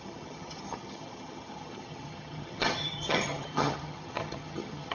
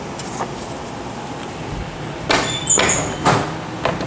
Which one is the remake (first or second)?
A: first